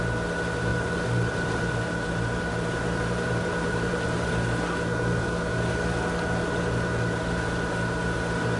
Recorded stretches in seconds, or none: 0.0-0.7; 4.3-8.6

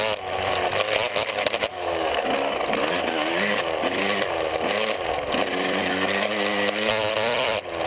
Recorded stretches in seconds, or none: 0.0-1.7; 2.3-5.8; 6.3-7.9